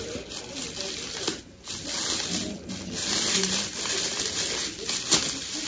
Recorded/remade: recorded